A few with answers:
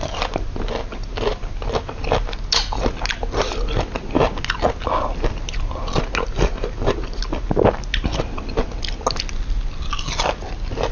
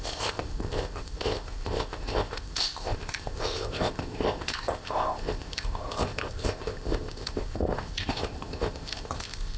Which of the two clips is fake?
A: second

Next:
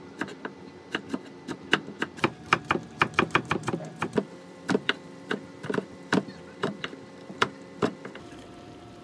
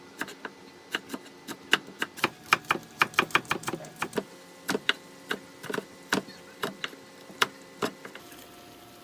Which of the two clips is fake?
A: first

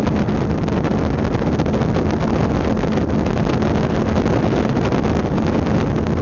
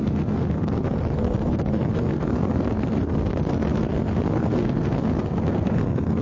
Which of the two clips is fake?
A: second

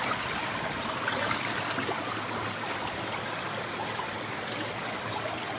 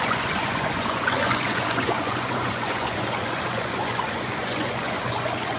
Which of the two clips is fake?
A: second